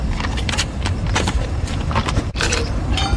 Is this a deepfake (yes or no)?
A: yes